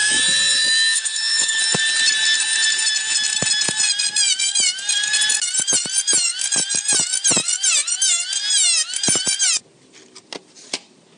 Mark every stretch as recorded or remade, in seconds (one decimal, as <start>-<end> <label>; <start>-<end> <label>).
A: 0.0-1.6 remade; 1.6-11.2 recorded